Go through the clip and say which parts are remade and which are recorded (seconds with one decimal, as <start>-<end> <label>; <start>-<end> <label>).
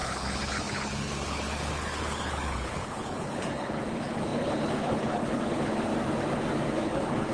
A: 0.0-5.9 remade; 5.9-6.7 recorded; 6.7-7.3 remade